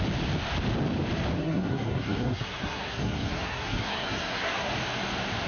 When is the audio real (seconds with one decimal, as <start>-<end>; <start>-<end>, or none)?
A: 0.0-1.4; 4.7-5.5